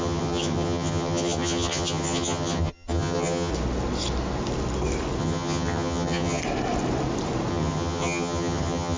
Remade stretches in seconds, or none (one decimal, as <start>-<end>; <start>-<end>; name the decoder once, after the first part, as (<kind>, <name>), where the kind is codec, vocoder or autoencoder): 0.0-3.5 (vocoder, HiFi-GAN); 5.2-6.4; 7.5-9.0